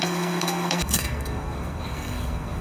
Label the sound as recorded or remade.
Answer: remade